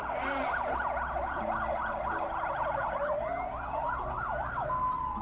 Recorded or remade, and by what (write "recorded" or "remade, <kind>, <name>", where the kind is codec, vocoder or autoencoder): recorded